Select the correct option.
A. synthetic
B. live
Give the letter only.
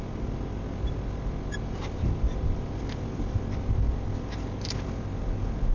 B